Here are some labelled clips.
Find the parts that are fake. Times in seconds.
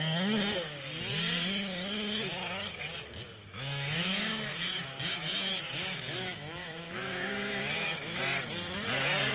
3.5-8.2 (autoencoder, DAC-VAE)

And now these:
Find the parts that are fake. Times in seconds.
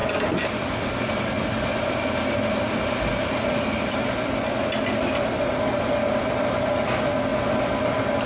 none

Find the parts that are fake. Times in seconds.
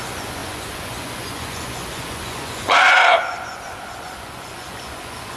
0.0-5.4 (vocoder, Vocos)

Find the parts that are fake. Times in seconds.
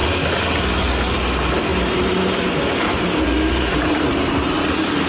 1.7-5.1 (vocoder, BigVGAN v2)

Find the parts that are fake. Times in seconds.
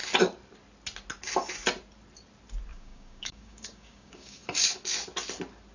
2.7-4.4 (codec, DAC)